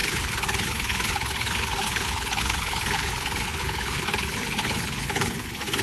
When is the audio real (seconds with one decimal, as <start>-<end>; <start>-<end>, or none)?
none